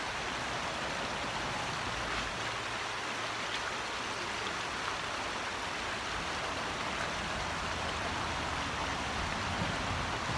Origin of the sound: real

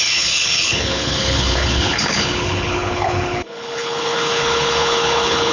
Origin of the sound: fake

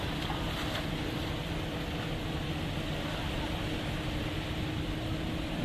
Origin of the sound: real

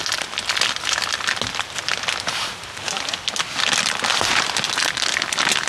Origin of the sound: real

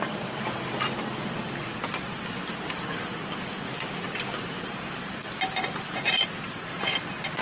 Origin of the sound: real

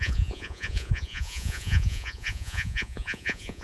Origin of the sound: fake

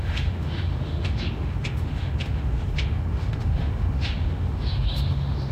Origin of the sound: fake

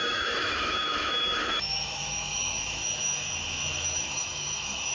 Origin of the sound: fake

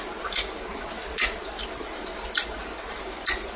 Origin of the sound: real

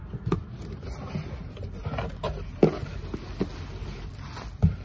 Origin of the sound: real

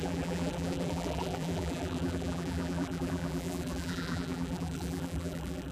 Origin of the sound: fake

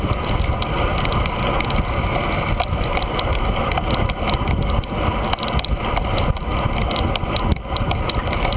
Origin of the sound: real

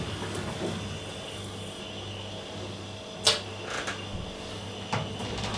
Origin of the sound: real